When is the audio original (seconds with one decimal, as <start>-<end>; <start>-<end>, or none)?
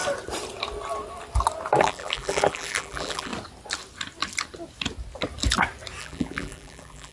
0.0-1.8; 3.3-6.0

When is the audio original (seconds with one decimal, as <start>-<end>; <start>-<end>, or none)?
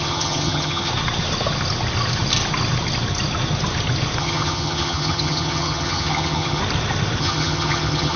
0.9-4.2; 6.6-7.2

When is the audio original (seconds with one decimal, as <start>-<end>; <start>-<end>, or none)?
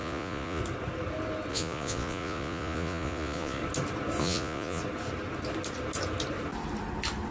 0.6-1.5; 3.6-4.2; 4.8-7.3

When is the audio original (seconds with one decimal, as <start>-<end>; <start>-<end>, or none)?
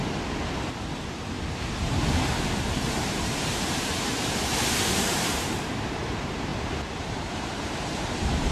0.0-3.0; 6.5-7.0